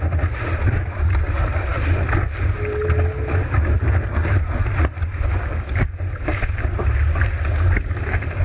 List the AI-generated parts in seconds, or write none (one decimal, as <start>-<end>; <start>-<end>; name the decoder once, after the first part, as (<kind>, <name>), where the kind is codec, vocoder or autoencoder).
none